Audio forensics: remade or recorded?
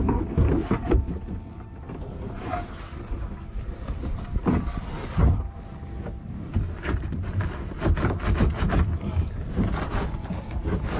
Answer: recorded